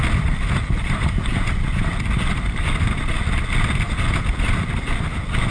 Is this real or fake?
real